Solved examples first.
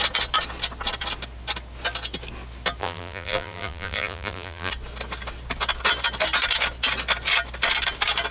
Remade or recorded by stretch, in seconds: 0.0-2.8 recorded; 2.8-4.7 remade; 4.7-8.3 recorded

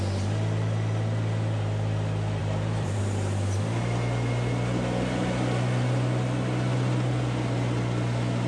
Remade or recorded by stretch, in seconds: 0.0-2.4 recorded; 2.4-3.0 remade; 3.0-8.5 recorded

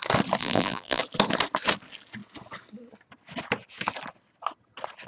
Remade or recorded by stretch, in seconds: 0.0-0.4 recorded; 0.4-1.0 remade; 1.0-5.1 recorded

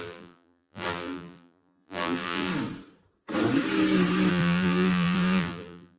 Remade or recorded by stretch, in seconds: 0.0-2.5 remade; 2.5-4.3 recorded; 4.3-6.0 remade

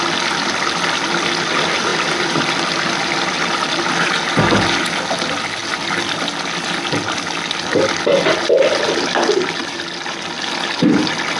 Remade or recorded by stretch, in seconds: 0.0-1.9 recorded; 1.9-3.9 remade; 3.9-11.4 recorded